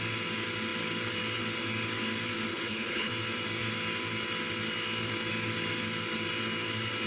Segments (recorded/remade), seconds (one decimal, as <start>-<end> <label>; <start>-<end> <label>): 0.0-2.5 recorded; 2.5-3.1 remade; 3.1-7.1 recorded